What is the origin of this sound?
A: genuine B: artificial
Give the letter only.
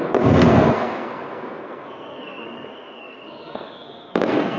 B